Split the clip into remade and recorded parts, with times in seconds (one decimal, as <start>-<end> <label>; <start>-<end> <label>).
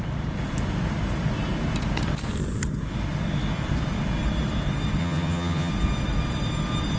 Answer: 0.0-5.0 recorded; 5.0-5.7 remade; 5.7-7.0 recorded